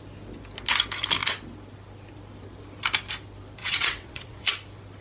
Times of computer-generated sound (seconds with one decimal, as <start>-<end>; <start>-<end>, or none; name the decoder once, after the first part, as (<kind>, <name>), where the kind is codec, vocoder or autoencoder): 3.6-4.5 (vocoder, WaveNeXt)